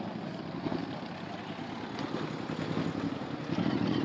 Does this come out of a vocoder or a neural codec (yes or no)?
no